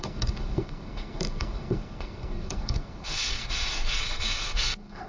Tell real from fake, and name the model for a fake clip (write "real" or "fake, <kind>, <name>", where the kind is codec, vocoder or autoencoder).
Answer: fake, codec, SNAC